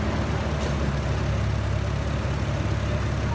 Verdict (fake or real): real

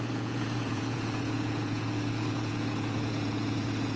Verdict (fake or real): fake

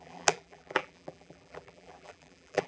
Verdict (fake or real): fake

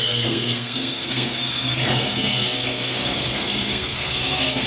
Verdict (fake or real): fake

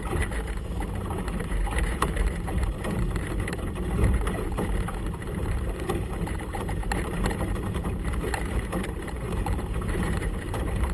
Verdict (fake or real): fake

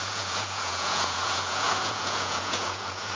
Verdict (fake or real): fake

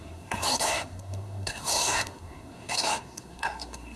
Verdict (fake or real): fake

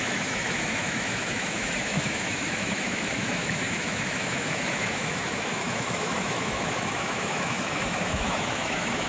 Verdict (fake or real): fake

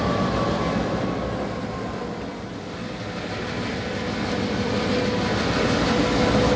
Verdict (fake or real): real